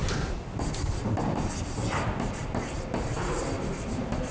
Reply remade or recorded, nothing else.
recorded